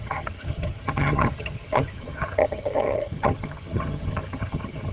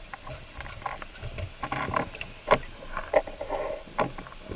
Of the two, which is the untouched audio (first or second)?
second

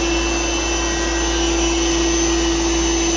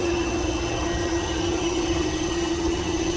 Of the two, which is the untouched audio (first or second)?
first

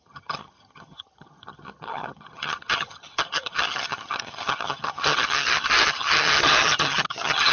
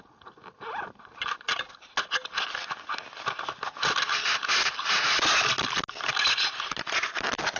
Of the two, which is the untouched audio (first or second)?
second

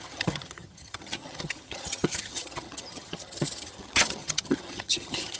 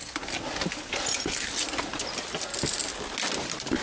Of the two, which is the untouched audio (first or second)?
second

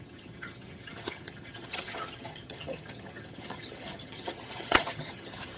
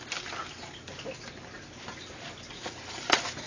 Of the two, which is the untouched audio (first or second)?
second